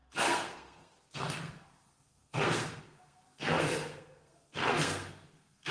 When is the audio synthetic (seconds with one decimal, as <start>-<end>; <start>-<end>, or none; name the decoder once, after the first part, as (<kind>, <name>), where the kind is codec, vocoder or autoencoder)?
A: 0.0-5.7 (codec, SNAC)